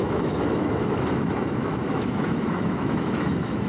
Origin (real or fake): fake